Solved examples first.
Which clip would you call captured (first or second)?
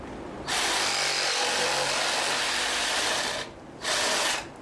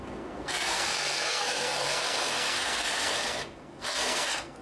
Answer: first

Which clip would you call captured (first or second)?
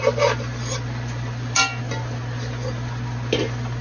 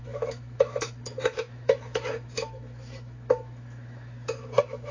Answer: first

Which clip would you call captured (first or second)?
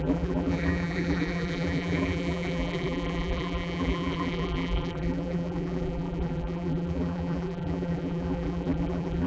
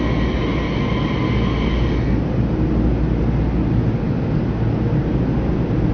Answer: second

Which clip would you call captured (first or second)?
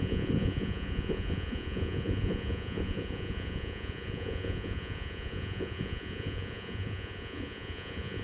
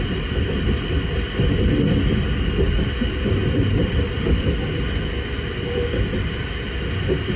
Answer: second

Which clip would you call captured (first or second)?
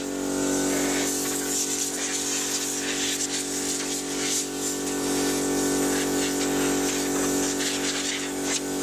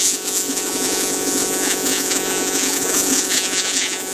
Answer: first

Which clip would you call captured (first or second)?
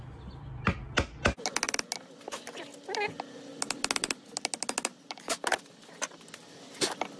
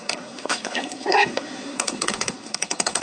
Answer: first